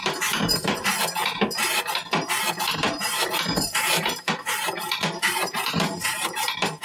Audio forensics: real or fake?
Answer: fake